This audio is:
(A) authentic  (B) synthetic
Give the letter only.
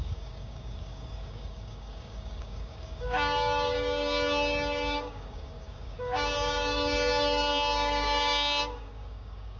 B